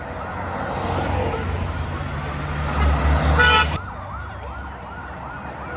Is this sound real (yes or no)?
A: yes